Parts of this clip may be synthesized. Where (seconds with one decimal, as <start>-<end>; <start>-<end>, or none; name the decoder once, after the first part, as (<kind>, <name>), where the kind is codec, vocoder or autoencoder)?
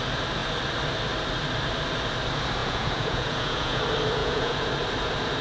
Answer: 2.6-3.8 (vocoder, Vocos); 4.2-4.7